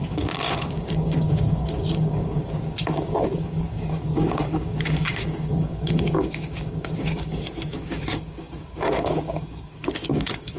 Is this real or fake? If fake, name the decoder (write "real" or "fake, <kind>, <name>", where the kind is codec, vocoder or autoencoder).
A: fake, codec, DAC